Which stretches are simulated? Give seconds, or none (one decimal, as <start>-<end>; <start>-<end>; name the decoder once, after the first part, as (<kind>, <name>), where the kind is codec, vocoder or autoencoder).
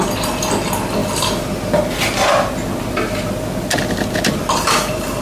1.0-1.8 (vocoder, BigVGAN v2)